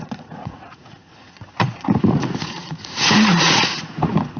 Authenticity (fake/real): fake